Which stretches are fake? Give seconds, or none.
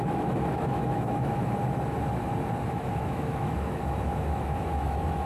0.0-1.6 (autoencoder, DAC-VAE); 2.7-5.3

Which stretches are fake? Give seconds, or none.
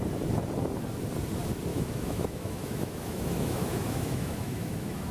1.7-5.1 (autoencoder, DAC-VAE)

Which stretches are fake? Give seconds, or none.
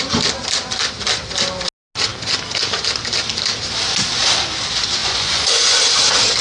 5.0-5.8 (vocoder, Vocos)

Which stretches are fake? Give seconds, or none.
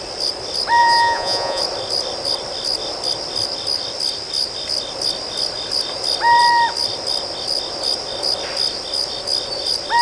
0.8-1.6 (vocoder, Vocos)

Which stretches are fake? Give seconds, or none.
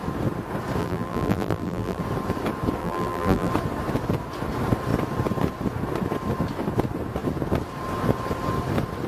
0.8-2.0 (vocoder, BigVGAN v2); 2.8-3.5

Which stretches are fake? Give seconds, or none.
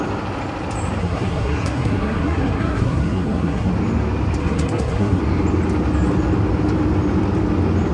1.0-3.7 (codec, SNAC); 4.4-5.2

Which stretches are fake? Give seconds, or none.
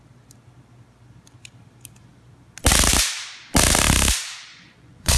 4.5-5.2 (vocoder, Vocos)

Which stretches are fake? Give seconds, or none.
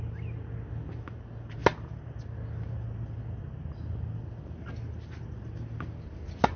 none